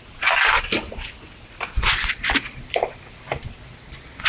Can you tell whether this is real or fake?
fake